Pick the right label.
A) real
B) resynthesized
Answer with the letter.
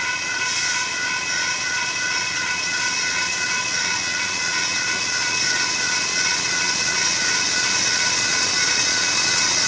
B